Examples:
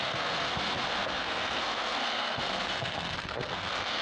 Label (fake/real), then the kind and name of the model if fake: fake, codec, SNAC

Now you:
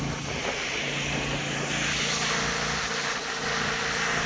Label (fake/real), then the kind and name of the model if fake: real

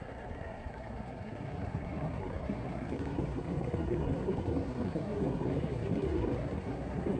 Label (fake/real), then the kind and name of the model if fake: fake, codec, SNAC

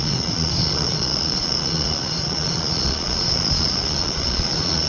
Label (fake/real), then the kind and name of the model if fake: fake, vocoder, Vocos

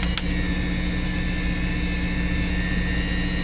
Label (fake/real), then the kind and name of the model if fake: real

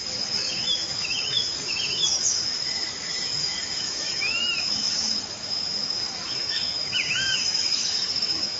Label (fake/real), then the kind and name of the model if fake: fake, autoencoder, DAC-VAE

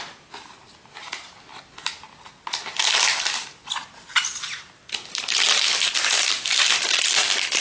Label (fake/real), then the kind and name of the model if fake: real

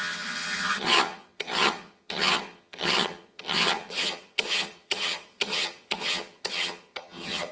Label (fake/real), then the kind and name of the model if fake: fake, vocoder, HiFi-GAN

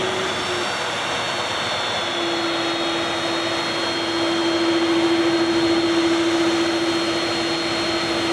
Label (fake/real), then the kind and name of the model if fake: real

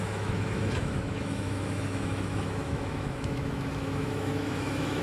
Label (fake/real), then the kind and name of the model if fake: fake, autoencoder, DAC-VAE